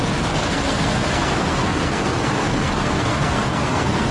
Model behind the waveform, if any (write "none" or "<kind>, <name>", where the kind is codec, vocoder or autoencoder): codec, SNAC